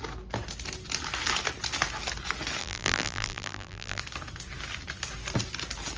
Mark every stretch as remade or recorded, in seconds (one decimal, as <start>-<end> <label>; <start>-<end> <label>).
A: 0.0-2.6 recorded; 2.6-4.0 remade; 4.0-6.0 recorded